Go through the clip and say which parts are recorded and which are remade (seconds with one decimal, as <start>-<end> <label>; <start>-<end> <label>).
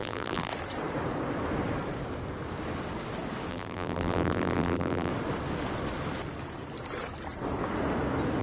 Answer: 0.0-0.5 remade; 0.5-3.5 recorded; 3.5-5.1 remade; 5.1-8.4 recorded